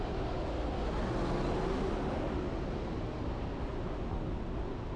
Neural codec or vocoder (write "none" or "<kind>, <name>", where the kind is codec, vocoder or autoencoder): none